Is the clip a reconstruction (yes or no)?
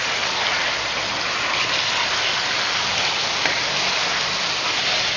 no